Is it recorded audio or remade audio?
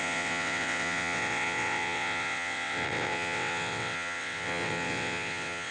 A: remade